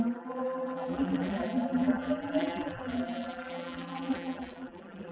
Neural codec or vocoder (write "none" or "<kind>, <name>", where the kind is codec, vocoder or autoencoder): vocoder, BigVGAN v2